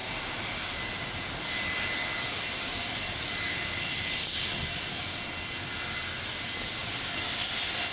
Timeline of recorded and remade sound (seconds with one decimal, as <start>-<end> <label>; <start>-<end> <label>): 0.0-4.7 remade; 4.7-6.8 recorded; 6.8-7.5 remade; 7.5-7.9 recorded